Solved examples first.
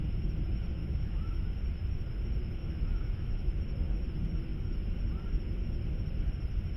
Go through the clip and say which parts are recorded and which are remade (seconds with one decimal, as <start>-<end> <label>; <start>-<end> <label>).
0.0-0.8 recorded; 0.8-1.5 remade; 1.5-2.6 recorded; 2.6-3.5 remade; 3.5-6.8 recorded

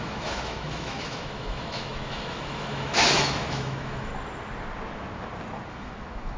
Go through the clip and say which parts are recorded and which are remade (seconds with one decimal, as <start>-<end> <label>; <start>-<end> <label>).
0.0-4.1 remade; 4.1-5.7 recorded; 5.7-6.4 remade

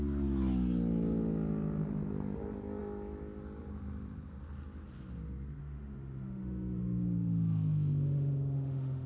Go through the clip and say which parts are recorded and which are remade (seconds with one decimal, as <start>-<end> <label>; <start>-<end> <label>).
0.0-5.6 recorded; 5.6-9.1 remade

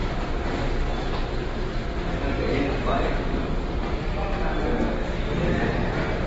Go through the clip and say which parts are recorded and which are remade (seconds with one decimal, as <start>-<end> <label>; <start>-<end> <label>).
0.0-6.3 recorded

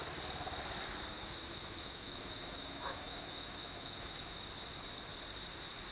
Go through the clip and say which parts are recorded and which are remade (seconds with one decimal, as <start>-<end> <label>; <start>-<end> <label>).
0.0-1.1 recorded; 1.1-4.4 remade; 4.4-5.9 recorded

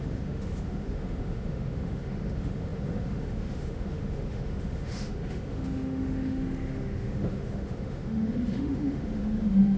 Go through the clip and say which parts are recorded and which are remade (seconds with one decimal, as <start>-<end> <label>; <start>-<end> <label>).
0.0-9.8 remade

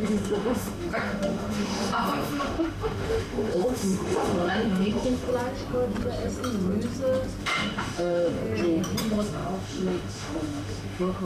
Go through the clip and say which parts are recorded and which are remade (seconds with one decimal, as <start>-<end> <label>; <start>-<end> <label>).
0.0-5.3 remade; 5.3-7.4 recorded; 7.4-8.4 remade; 8.4-9.0 recorded; 9.0-11.2 remade

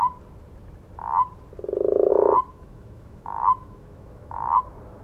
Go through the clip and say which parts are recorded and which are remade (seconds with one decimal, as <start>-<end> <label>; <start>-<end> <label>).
0.0-2.1 recorded; 2.1-4.6 remade; 4.6-5.0 recorded